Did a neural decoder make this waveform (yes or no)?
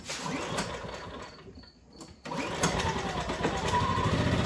no